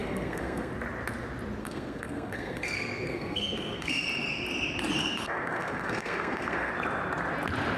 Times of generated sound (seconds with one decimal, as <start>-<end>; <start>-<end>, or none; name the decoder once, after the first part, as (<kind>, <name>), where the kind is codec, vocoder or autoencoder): 0.0-0.7 (codec, SNAC); 1.6-3.9; 5.0-6.7